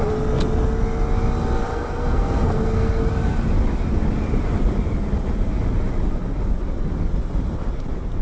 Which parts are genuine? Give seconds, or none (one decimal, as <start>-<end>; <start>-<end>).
0.0-1.7; 3.1-8.2